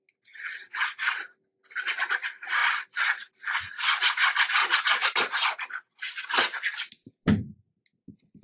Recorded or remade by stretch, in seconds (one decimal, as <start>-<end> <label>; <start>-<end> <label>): 0.0-4.6 recorded; 4.6-5.4 remade; 5.4-8.4 recorded